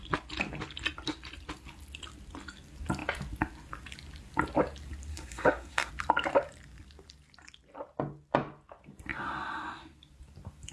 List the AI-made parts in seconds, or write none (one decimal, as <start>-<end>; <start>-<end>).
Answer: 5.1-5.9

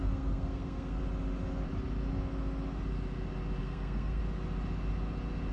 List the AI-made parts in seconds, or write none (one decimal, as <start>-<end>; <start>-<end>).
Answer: 0.0-1.0; 3.6-4.2

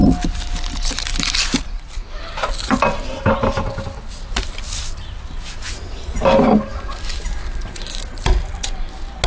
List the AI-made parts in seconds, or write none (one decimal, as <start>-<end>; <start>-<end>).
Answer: none

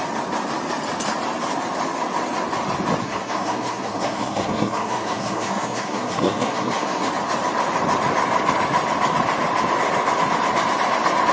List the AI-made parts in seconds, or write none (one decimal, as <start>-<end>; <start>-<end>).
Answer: 3.0-7.1